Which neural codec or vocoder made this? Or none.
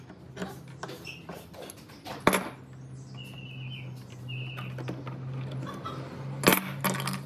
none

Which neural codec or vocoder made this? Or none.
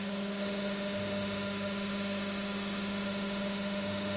autoencoder, DAC-VAE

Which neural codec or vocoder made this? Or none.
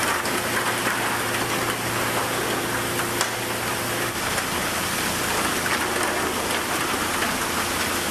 none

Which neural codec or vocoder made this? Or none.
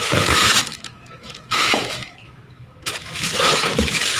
autoencoder, DAC-VAE